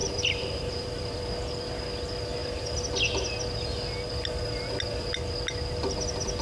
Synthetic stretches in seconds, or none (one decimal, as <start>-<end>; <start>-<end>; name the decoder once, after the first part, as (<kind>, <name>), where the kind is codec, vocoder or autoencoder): 0.0-1.2 (vocoder, BigVGAN v2)